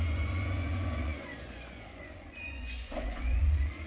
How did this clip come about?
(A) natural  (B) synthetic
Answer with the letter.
B